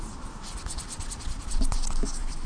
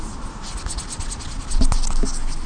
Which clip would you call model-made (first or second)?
first